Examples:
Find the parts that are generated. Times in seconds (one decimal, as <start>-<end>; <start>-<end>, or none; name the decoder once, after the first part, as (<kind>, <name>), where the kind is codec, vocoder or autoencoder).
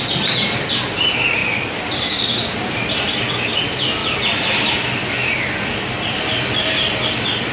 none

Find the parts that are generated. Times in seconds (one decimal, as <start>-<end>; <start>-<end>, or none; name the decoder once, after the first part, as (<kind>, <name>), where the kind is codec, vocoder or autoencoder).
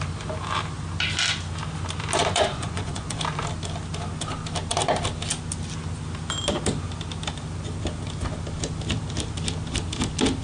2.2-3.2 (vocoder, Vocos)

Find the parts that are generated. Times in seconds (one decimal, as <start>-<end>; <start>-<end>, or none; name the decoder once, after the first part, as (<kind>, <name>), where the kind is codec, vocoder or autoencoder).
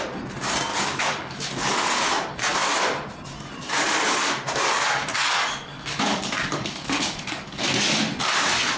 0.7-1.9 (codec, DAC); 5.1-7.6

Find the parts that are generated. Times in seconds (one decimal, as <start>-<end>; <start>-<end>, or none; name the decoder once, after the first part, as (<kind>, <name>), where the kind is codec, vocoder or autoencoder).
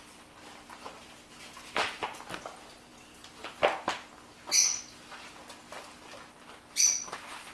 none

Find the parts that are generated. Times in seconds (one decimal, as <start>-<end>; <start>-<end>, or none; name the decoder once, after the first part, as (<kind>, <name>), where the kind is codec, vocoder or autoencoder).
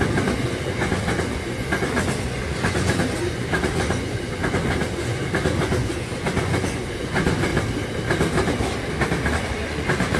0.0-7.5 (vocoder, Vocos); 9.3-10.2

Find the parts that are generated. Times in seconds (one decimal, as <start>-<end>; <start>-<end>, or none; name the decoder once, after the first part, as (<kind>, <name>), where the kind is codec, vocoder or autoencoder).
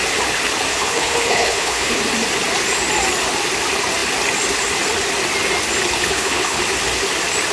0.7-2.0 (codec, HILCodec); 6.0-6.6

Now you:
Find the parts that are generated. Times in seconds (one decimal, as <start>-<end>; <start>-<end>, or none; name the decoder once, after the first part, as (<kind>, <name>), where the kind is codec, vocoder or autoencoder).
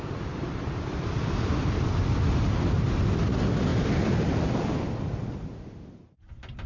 none